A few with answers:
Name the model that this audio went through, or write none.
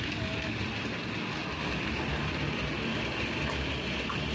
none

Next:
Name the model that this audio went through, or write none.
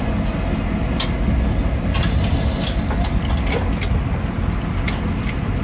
none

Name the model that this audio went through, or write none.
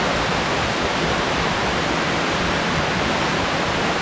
none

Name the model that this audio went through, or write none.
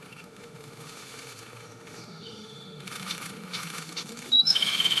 autoencoder, DAC-VAE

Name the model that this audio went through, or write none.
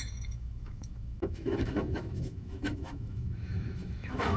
autoencoder, DAC-VAE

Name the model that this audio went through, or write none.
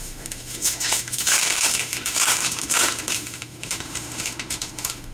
autoencoder, DAC-VAE